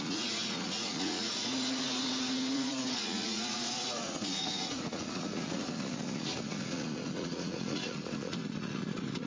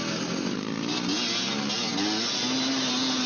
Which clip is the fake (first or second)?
first